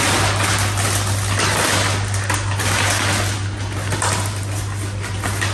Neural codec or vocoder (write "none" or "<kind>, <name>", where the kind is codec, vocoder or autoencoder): none